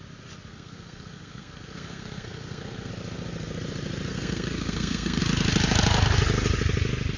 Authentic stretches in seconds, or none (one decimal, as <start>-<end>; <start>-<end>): 0.0-0.5; 2.9-4.1; 5.2-7.2